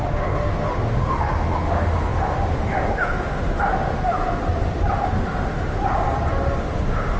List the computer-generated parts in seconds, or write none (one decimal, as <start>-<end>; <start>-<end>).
0.0-4.4; 5.0-5.8; 6.6-7.2